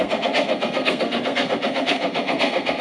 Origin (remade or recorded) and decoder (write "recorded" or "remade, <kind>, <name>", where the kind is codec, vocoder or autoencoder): remade, codec, SNAC